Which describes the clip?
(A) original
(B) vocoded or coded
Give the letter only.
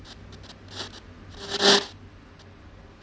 A